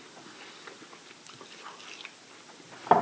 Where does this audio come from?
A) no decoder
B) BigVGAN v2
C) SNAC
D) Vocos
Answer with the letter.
A